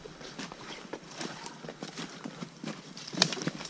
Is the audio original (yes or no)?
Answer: no